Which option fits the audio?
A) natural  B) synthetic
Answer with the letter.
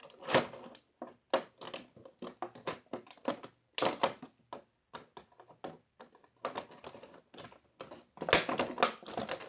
A